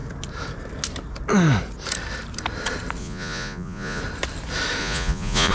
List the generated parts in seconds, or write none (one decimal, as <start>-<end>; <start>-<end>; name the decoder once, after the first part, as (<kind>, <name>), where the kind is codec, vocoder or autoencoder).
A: 3.0-4.0 (vocoder, Vocos); 4.8-5.5